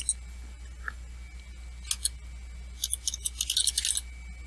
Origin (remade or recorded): recorded